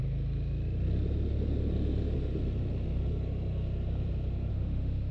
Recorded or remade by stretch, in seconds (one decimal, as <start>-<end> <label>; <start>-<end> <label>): 0.0-4.5 recorded; 4.5-5.1 remade